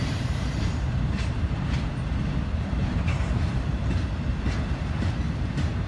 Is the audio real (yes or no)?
no